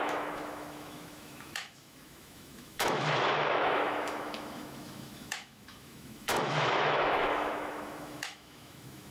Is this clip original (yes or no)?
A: no